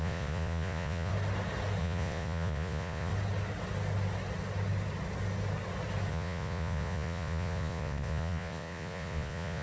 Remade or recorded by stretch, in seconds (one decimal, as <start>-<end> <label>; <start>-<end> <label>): 0.0-1.1 remade; 1.1-1.8 recorded; 1.8-3.1 remade; 3.1-6.1 recorded; 6.1-9.6 remade